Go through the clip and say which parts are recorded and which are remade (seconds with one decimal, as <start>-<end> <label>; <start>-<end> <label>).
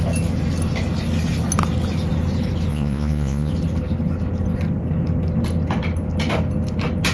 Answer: 0.0-2.7 recorded; 2.7-3.5 remade; 3.5-7.1 recorded